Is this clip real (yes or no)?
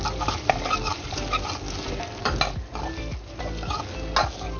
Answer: yes